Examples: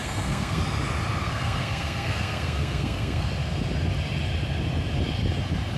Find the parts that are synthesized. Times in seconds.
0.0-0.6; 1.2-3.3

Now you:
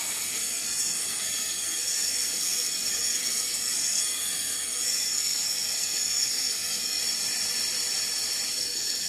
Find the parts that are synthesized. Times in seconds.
0.0-7.0; 8.5-9.1